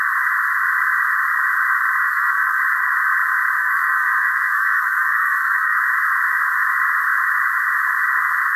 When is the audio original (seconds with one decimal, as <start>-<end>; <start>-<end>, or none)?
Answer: 0.0-2.0; 2.6-3.6; 5.8-8.6